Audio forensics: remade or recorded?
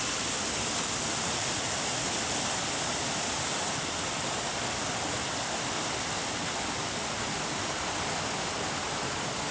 remade